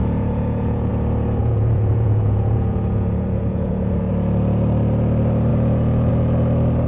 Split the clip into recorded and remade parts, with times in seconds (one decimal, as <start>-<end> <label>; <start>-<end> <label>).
0.0-0.9 remade; 0.9-1.4 recorded; 1.4-4.1 remade; 4.1-5.5 recorded; 5.5-6.1 remade; 6.1-6.9 recorded